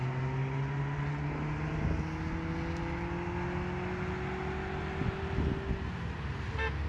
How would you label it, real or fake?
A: real